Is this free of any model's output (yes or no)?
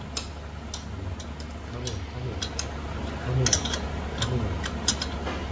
yes